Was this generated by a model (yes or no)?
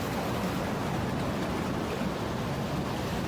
no